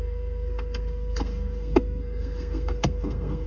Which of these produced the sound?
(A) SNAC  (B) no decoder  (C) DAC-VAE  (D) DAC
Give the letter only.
A